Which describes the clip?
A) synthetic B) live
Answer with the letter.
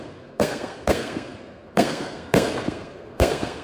A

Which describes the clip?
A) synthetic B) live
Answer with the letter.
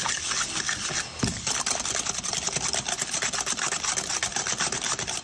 B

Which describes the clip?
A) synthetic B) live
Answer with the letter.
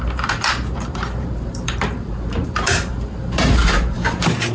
A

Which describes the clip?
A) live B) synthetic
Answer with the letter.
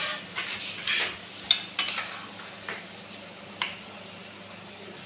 A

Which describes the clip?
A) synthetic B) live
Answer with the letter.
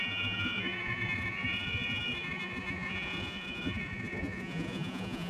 A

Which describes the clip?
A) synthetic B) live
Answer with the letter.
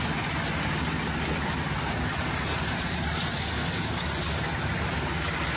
B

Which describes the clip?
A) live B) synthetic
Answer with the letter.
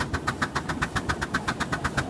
A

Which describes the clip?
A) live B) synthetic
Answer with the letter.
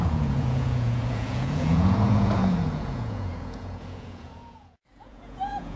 B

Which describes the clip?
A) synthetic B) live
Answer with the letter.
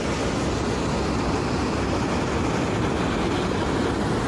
B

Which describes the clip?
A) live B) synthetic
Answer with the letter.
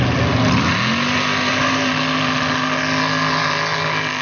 A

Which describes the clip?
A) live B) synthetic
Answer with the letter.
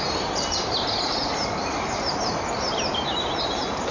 B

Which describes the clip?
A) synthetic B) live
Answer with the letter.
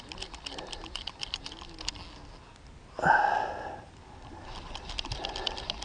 B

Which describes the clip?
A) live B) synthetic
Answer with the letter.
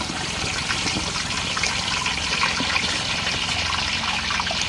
A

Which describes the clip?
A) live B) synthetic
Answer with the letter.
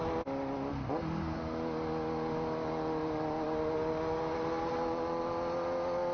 A